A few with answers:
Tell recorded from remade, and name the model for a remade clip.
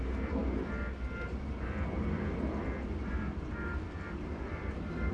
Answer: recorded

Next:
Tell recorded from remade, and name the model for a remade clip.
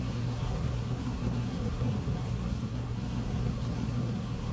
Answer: remade, codec, SNAC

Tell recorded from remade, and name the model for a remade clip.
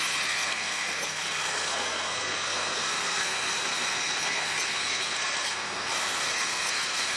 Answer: remade, codec, SNAC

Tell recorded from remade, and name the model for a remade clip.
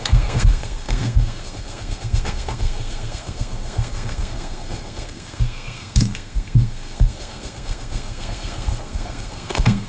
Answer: remade, codec, SNAC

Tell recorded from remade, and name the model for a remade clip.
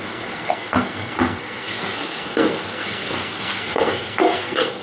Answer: remade, codec, SNAC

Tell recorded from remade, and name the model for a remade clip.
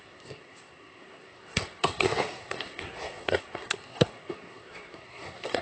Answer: remade, codec, SNAC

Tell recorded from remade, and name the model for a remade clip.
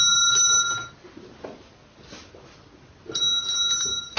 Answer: recorded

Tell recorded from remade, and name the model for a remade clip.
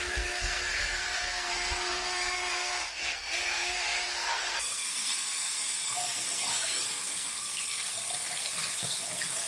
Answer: remade, codec, SNAC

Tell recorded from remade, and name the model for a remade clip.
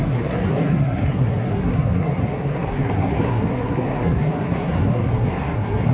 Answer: remade, codec, SNAC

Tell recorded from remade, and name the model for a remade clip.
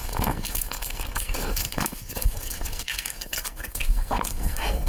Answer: remade, codec, SNAC